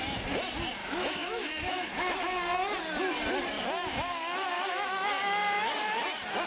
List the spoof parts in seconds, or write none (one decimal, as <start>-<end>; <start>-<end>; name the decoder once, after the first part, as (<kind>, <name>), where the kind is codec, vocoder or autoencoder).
0.8-2.2 (autoencoder, DAC-VAE); 4.5-5.1